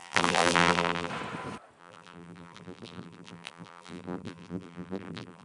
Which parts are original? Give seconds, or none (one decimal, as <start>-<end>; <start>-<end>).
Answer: 1.1-1.8